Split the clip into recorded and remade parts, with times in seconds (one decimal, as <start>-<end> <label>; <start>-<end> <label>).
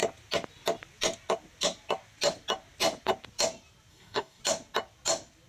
0.0-3.9 recorded; 3.9-4.4 remade; 4.4-5.5 recorded